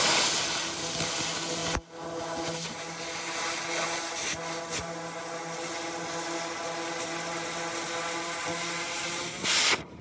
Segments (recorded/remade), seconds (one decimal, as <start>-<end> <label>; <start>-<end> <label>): 0.0-10.0 recorded